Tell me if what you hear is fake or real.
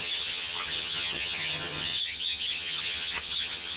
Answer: fake